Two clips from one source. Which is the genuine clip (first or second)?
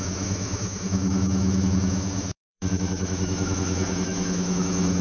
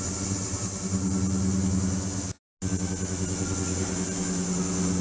second